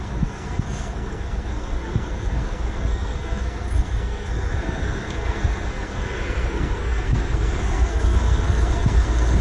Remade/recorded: remade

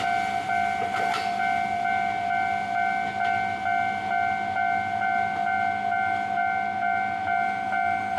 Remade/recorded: recorded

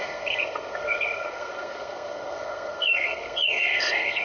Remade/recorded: remade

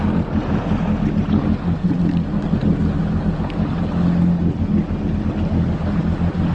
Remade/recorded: recorded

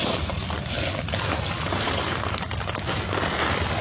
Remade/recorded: recorded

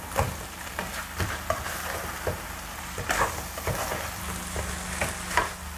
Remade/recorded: recorded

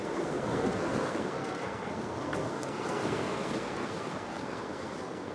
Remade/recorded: remade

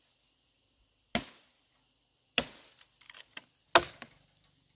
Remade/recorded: recorded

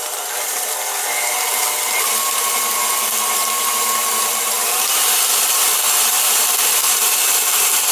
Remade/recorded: recorded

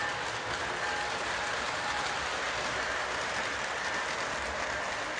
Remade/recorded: recorded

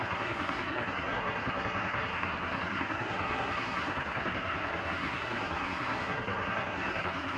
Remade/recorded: remade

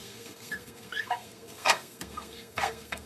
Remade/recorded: remade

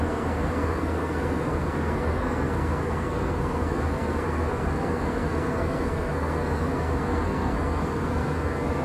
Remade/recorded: remade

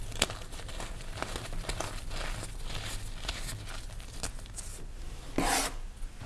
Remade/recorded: recorded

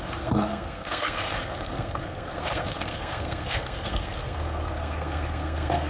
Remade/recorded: remade